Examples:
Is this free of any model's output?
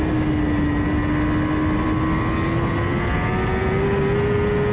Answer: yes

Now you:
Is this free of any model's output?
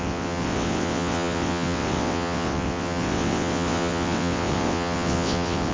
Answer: no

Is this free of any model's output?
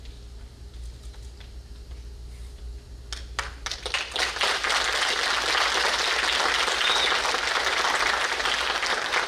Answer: yes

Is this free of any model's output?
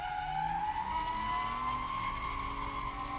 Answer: yes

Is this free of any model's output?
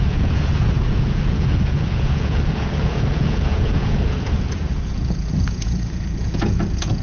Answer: no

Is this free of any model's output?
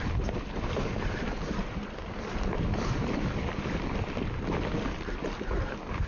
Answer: no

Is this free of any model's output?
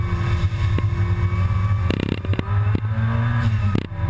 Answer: yes